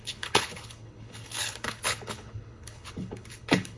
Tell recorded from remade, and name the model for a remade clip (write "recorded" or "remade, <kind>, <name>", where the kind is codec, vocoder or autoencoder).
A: remade, codec, HILCodec